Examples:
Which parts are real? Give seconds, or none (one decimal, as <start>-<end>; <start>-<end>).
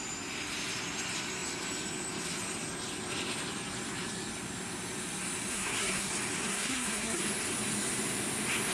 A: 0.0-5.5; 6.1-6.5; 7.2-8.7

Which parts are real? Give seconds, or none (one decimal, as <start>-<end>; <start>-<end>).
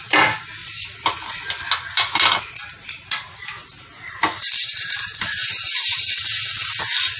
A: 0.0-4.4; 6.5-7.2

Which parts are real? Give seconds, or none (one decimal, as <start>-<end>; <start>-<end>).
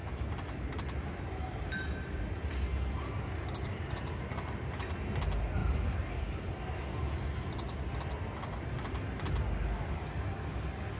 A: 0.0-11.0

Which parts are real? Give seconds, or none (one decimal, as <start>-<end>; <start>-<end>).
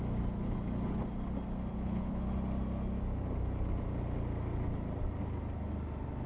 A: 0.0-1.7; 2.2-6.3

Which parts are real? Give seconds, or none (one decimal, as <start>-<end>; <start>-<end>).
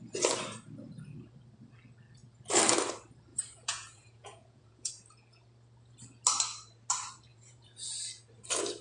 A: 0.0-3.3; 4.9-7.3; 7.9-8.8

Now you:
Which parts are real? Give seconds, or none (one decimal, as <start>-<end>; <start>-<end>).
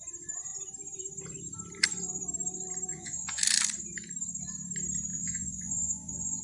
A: 0.0-2.9; 3.4-5.1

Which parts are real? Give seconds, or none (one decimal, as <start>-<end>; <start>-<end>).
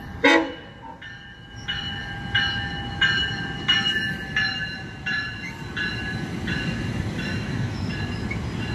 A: 0.0-7.3; 7.9-8.7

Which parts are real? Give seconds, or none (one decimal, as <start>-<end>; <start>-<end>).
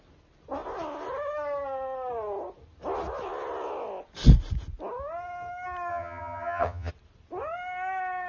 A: 0.0-5.9; 6.9-8.3